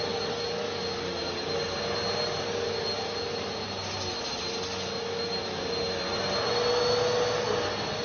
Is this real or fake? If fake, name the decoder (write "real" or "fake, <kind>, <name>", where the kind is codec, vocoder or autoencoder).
real